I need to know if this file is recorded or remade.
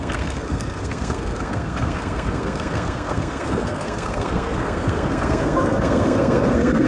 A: remade